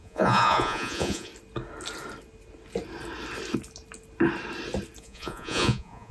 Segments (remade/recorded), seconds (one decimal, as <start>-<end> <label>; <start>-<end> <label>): 0.0-1.3 remade; 1.3-5.0 recorded; 5.0-6.1 remade